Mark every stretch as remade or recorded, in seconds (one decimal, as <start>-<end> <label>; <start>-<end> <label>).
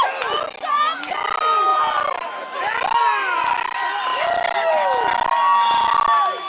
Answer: 0.0-6.5 recorded